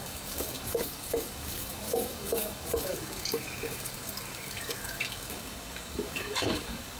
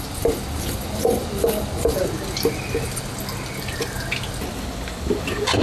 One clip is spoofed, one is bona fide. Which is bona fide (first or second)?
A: second